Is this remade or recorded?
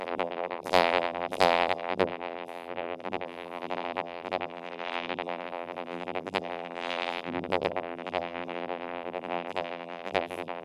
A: remade